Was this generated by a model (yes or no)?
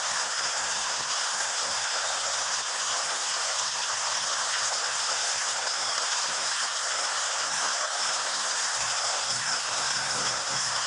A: yes